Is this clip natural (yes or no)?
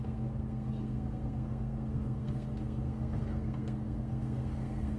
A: no